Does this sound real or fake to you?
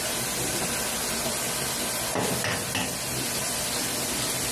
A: real